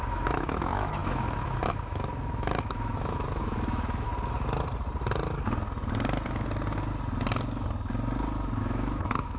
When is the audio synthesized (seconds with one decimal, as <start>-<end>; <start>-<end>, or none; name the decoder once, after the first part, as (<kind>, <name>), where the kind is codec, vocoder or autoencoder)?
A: 0.0-4.1 (autoencoder, DAC-VAE); 8.6-9.4

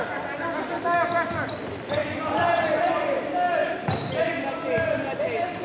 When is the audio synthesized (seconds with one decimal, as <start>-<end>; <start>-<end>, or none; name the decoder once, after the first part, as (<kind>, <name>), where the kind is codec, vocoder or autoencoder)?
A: none

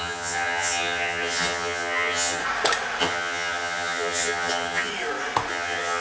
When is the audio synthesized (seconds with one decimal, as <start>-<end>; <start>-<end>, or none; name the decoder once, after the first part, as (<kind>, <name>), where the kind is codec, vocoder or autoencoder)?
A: 0.0-2.4 (vocoder, HiFi-GAN); 3.0-4.9; 5.5-6.0

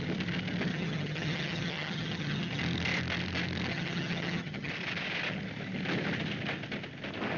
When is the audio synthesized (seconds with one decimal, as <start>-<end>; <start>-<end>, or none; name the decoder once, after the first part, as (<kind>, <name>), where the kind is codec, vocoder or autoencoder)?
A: 0.7-2.6 (vocoder, HiFi-GAN); 3.7-4.7

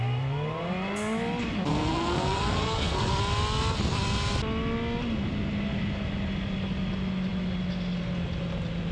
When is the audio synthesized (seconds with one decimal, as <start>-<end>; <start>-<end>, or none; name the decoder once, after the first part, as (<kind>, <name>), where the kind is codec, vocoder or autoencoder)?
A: 1.7-3.2 (codec, SNAC)